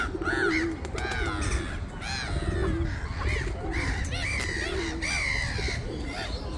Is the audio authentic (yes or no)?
yes